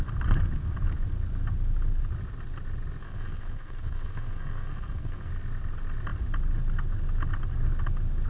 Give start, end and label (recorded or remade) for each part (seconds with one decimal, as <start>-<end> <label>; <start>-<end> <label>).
0.0-3.0 recorded; 3.0-5.3 remade; 5.3-8.3 recorded